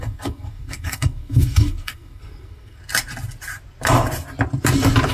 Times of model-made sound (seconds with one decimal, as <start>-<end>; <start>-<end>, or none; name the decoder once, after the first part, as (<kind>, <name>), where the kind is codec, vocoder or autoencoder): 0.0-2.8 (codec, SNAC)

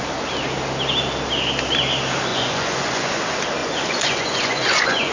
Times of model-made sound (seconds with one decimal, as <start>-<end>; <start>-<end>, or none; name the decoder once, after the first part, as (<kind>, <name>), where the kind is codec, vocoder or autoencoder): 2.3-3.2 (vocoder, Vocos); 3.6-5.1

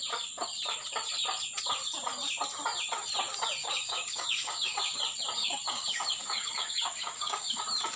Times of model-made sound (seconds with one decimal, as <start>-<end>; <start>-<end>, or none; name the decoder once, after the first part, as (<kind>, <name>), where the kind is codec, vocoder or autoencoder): 3.6-5.0 (codec, DAC); 5.4-7.6